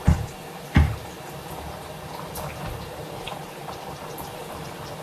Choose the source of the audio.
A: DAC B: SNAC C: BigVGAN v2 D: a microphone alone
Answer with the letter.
D